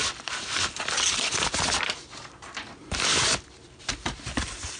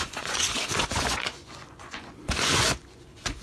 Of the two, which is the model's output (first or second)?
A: second